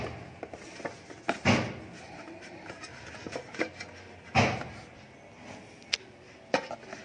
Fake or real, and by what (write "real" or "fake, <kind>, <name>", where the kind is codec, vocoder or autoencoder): real